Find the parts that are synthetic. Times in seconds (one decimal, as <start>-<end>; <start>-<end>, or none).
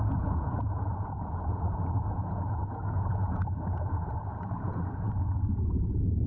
0.0-6.3